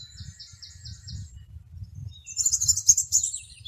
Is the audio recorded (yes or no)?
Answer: no